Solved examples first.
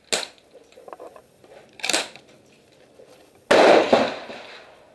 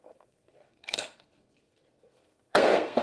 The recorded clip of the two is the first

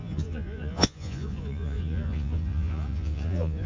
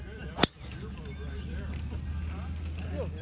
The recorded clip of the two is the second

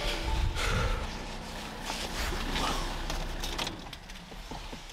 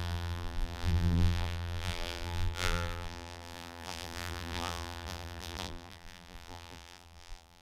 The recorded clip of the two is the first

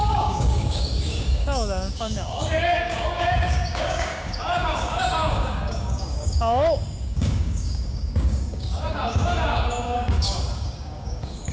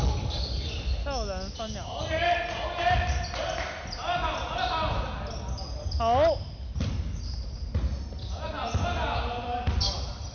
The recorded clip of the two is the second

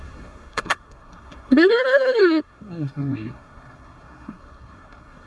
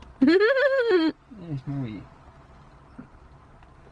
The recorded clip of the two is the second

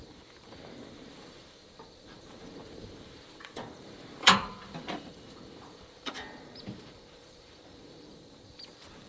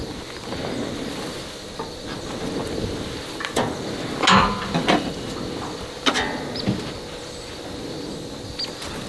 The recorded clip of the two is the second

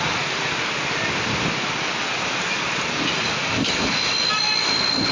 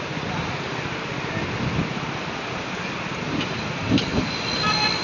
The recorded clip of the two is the first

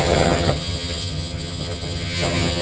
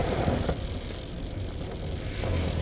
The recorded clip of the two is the second